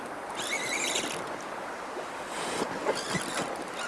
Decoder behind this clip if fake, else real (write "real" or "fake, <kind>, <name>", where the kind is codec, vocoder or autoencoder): real